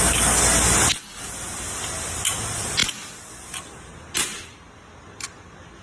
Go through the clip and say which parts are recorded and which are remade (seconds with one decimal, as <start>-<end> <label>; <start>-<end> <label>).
0.0-5.8 recorded